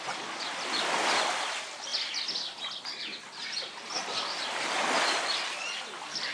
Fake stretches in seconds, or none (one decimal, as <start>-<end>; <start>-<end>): 0.0-1.9; 2.8-6.3